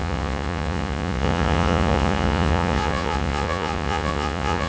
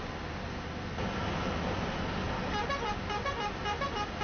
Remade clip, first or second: first